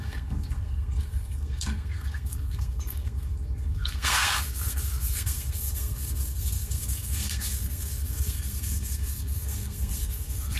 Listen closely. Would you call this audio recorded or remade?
remade